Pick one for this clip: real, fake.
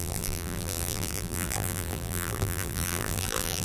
fake